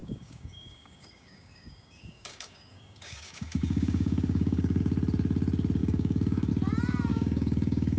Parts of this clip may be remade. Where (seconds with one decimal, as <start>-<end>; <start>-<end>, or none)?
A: 0.0-4.8; 5.8-6.5; 7.1-8.0